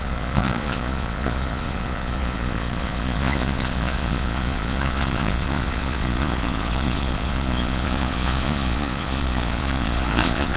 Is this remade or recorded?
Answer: remade